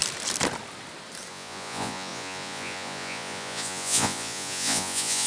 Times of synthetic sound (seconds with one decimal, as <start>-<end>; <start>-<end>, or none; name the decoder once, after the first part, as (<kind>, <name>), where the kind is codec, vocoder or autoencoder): 1.3-5.3 (vocoder, Vocos)